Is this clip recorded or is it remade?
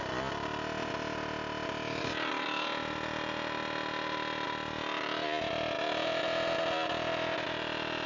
recorded